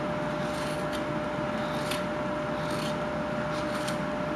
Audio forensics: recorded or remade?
recorded